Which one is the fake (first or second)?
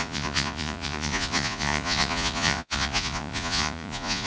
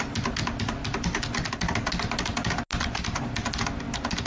first